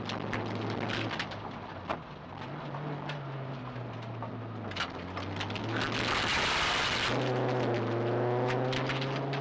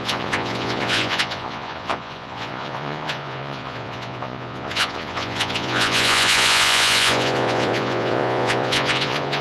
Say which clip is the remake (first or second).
second